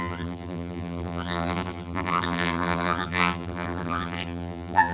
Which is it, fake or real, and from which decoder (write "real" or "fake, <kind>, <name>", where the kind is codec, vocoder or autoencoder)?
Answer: fake, vocoder, BigVGAN v2